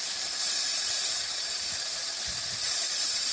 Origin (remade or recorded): remade